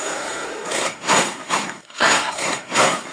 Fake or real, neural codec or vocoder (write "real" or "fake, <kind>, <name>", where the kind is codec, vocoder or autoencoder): fake, codec, SNAC